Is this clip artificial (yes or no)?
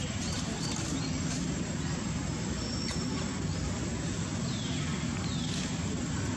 yes